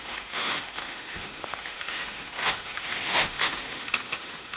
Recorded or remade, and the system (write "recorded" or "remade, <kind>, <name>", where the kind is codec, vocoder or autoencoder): remade, autoencoder, DAC-VAE